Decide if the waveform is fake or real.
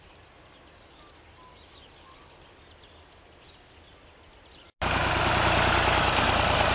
real